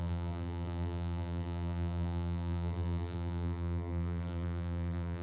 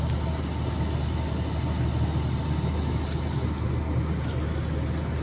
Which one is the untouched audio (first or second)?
second